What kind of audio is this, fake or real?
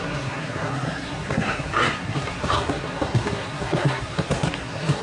fake